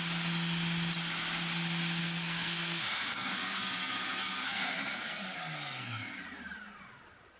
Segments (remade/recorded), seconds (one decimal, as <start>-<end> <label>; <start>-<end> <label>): 0.0-2.0 recorded; 2.0-6.2 remade; 6.2-7.4 recorded